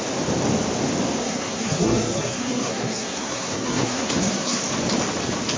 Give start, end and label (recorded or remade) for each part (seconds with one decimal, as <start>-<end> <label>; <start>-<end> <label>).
0.0-1.2 recorded; 1.2-4.6 remade; 4.6-5.6 recorded